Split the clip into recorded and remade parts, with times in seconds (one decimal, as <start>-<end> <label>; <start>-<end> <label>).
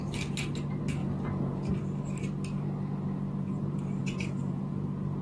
0.0-1.0 recorded; 1.0-1.7 remade; 1.7-4.0 recorded; 4.0-4.6 remade; 4.6-5.2 recorded